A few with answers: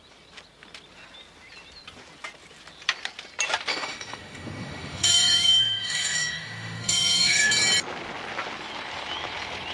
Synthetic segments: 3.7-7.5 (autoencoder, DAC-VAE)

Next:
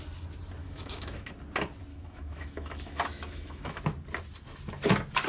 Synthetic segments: 0.6-1.3 (autoencoder, DAC-VAE); 1.9-3.8

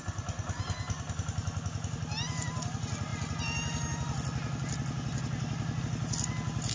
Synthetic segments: none

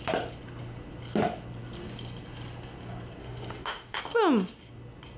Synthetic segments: 3.2-4.0 (autoencoder, DAC-VAE)

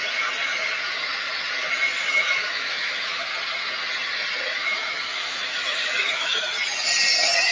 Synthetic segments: 2.0-3.3 (autoencoder, DAC-VAE); 4.6-6.5

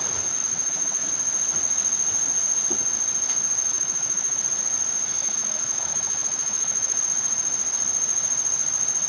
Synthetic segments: 0.4-1.1 (autoencoder, DAC-VAE); 3.7-4.4; 5.2-7.0